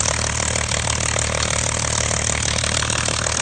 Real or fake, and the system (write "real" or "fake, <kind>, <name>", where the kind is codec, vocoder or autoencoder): real